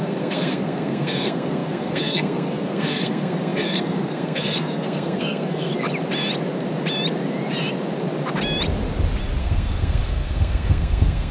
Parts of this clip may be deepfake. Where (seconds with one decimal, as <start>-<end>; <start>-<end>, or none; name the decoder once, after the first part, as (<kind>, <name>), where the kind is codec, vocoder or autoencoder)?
0.0-5.7 (codec, SNAC); 9.4-11.3